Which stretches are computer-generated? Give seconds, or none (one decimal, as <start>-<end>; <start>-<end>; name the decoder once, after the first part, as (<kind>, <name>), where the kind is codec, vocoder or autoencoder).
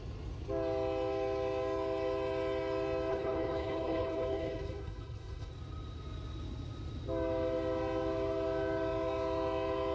3.1-5.5 (codec, HILCodec)